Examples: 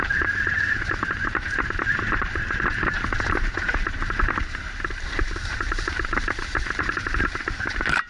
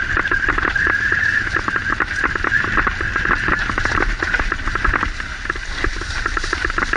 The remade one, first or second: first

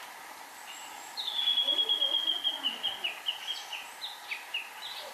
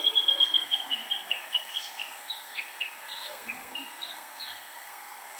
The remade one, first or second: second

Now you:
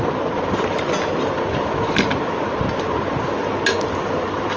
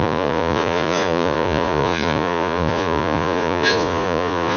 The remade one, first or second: second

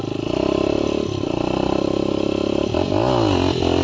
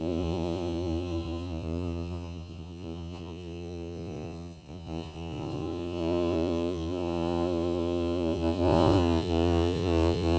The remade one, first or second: second